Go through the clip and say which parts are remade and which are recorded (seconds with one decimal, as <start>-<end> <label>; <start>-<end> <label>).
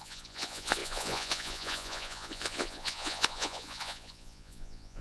0.0-5.0 remade